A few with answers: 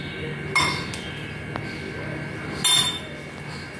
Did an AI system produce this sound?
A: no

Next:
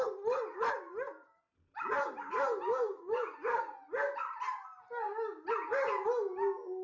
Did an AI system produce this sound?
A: no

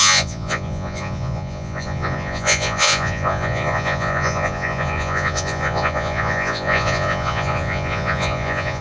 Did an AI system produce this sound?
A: yes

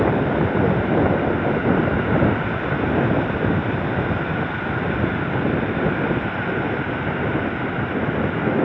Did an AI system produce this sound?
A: no